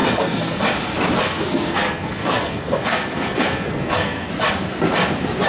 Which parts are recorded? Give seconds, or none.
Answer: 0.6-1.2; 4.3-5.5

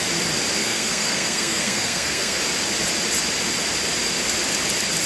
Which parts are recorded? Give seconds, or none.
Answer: 0.0-0.6; 2.4-5.1

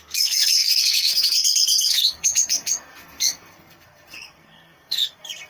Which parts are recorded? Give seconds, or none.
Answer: none

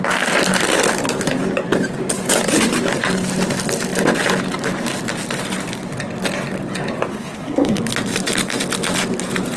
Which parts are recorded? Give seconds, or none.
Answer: 0.0-7.1; 7.8-9.6

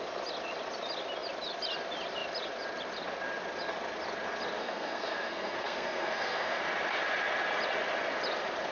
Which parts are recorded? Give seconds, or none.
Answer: 0.0-4.6; 6.6-8.7

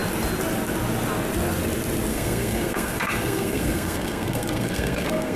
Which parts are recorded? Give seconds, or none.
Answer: 0.0-2.1

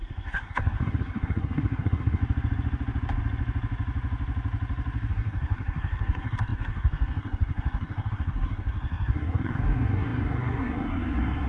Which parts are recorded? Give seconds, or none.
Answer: 2.2-5.1